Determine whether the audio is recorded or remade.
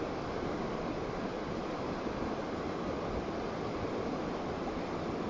recorded